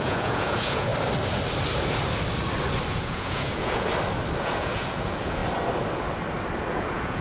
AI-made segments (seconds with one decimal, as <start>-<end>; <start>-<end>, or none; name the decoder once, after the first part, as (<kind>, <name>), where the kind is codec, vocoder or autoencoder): 0.0-0.9 (vocoder, Vocos); 2.9-3.9; 4.4-5.4; 6.7-7.2